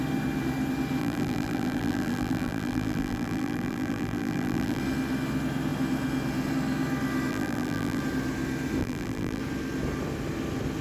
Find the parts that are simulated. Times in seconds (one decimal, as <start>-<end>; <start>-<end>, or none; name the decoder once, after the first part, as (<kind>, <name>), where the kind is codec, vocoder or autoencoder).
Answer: 1.0-4.8 (vocoder, BigVGAN v2); 7.3-8.0; 8.8-9.4